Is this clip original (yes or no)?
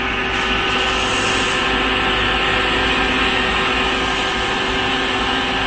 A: yes